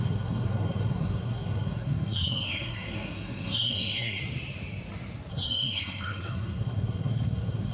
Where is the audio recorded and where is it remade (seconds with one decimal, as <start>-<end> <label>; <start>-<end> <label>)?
0.0-4.2 remade; 4.2-5.3 recorded; 5.3-7.7 remade